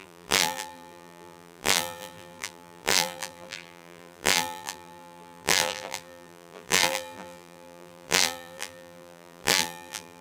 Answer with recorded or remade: remade